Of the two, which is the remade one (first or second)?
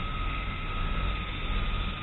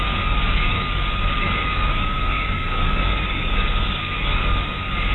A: second